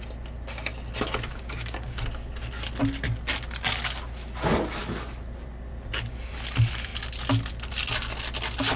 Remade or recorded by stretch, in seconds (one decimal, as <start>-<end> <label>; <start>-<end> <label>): 0.0-1.3 recorded; 1.3-2.0 remade; 2.0-8.8 recorded